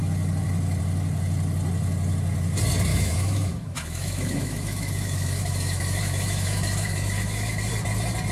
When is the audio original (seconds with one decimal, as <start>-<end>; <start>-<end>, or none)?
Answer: 0.0-2.9; 7.7-8.3